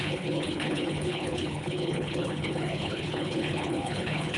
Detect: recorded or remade remade